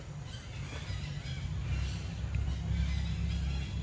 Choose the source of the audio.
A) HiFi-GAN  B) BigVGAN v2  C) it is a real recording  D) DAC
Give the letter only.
C